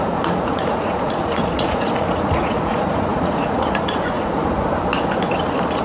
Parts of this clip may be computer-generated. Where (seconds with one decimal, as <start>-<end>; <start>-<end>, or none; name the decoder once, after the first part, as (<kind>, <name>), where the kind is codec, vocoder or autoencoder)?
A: 0.0-4.4 (vocoder, Vocos)